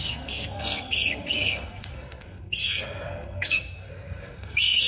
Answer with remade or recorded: remade